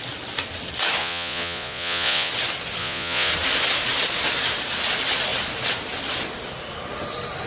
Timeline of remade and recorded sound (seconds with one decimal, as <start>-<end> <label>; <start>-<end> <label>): 0.0-1.0 recorded; 1.0-2.3 remade; 2.3-2.8 recorded; 2.8-3.3 remade; 3.3-7.5 recorded